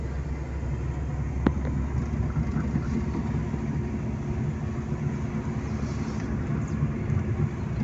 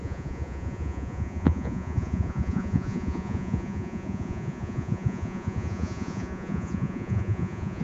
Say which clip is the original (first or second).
first